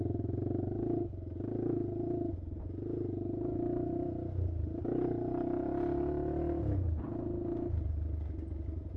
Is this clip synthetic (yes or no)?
no